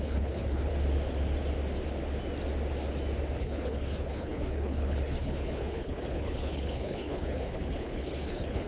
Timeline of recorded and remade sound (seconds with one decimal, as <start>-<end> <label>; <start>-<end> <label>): 0.0-0.7 remade; 0.7-3.4 recorded; 3.4-8.7 remade

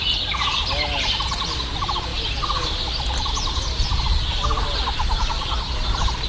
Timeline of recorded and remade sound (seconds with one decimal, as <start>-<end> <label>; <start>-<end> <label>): 0.0-6.3 recorded